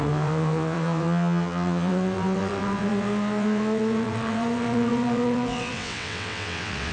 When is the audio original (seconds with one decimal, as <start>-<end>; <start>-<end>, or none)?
none